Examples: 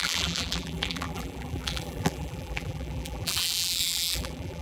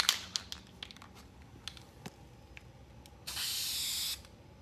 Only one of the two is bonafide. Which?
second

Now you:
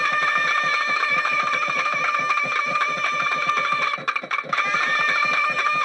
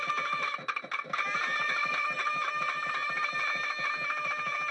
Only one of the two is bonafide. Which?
second